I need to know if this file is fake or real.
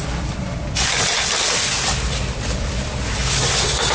fake